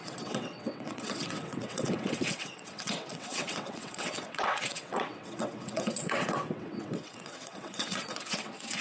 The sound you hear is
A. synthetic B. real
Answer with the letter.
A